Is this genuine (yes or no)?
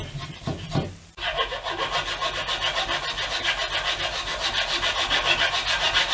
yes